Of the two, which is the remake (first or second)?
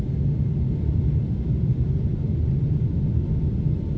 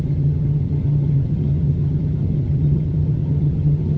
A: second